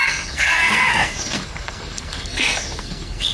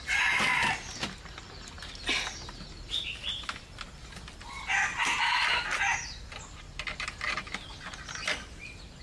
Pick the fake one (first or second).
first